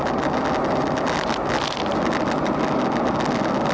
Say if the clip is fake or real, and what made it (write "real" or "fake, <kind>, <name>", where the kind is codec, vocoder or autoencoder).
real